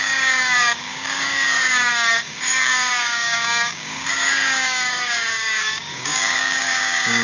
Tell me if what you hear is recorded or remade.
remade